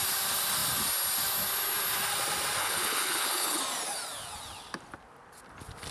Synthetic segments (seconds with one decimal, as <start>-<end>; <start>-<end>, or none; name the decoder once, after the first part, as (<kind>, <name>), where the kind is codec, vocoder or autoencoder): 2.6-3.6 (codec, HILCodec)